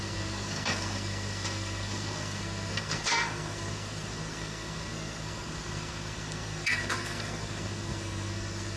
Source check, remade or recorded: remade